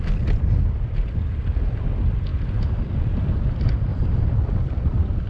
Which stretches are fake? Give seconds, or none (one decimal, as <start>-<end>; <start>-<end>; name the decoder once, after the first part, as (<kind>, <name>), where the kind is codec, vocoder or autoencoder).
none